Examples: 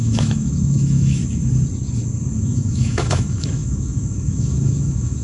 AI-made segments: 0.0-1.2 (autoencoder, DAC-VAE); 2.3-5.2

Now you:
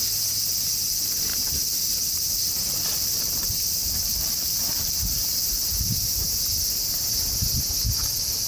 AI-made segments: 1.3-6.4 (vocoder, BigVGAN v2)

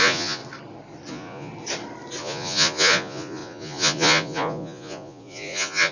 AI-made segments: 0.0-0.4 (vocoder, Vocos); 1.1-1.5; 2.2-5.9

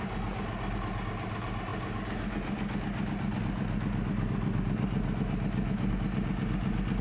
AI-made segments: none